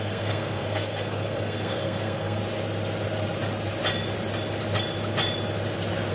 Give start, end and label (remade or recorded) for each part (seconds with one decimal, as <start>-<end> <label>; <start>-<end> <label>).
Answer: 0.0-2.4 remade; 2.4-6.1 recorded